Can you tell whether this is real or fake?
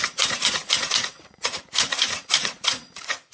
fake